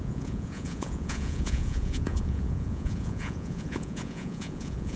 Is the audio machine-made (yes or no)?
yes